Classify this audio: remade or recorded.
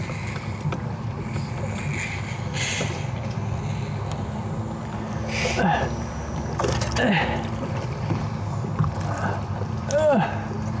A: recorded